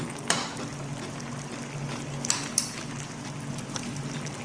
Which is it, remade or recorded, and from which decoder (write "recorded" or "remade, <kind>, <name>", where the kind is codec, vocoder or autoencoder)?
recorded